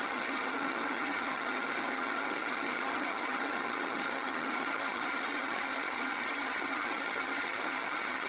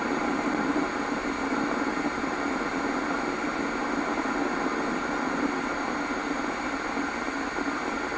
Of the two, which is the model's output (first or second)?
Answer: first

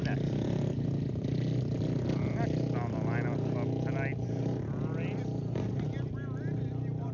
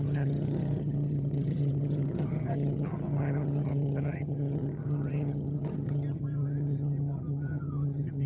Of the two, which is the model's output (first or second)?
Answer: second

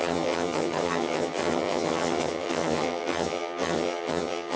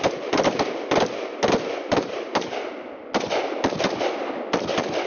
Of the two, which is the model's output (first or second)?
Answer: first